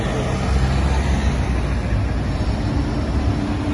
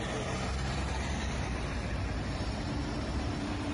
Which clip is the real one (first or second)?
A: first